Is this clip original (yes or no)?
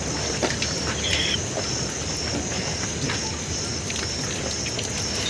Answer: yes